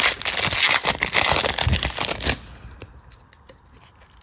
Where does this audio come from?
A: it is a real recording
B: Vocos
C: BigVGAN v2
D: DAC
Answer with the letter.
A